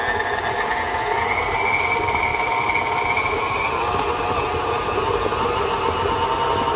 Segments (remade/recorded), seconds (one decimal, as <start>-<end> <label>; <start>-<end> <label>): 0.0-6.8 recorded